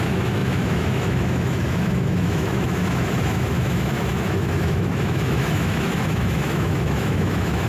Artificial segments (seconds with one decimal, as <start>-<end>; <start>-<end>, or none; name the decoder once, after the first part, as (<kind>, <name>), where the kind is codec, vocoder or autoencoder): 0.0-7.7 (autoencoder, DAC-VAE)